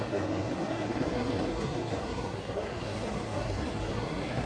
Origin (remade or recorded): remade